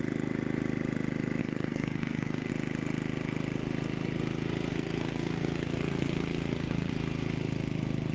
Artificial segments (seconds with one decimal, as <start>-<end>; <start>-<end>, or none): 1.4-2.5; 4.7-6.9